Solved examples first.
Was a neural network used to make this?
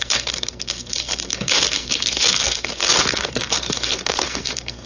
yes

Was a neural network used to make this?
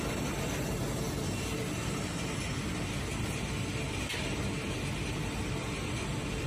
no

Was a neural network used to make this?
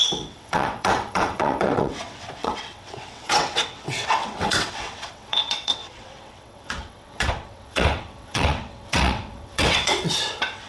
yes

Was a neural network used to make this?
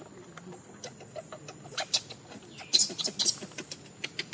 no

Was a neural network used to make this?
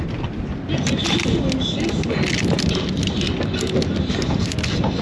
no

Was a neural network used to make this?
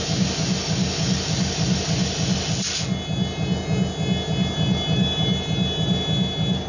no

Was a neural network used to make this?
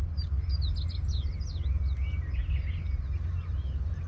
no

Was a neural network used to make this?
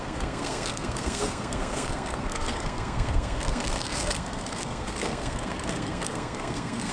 yes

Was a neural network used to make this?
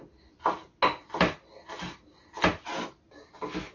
no